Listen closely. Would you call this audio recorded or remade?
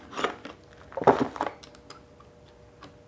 recorded